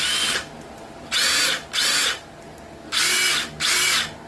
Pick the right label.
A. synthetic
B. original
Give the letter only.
B